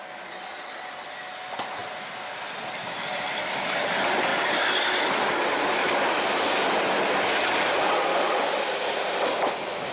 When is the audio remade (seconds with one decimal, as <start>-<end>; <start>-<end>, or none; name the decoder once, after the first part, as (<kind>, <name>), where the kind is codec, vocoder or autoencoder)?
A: none